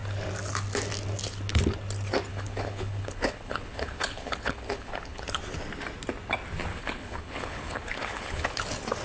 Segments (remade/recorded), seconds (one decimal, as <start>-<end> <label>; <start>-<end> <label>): 0.0-2.3 recorded; 2.3-5.2 remade; 5.2-6.7 recorded; 6.7-8.6 remade; 8.6-9.0 recorded